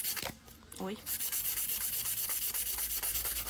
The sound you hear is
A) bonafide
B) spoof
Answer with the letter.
A